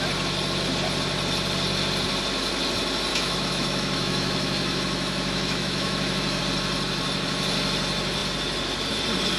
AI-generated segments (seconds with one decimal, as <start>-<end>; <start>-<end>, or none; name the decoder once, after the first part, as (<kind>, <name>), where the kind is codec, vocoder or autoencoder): 3.1-6.4 (autoencoder, DAC-VAE)